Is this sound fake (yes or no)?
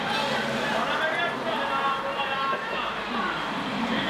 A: yes